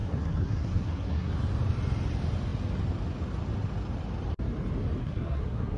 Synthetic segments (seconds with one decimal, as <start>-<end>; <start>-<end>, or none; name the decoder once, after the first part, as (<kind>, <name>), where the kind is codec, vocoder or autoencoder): 0.0-1.3 (codec, SNAC); 5.0-5.8